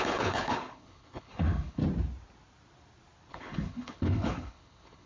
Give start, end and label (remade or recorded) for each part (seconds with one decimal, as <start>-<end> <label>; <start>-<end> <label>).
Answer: 0.0-1.8 remade; 1.8-3.3 recorded; 3.3-5.1 remade